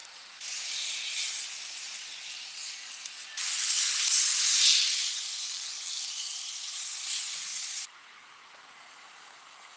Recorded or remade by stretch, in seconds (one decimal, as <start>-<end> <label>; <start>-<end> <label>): 0.0-2.0 remade; 2.0-3.8 recorded; 3.8-4.6 remade; 4.6-6.2 recorded; 6.2-9.8 remade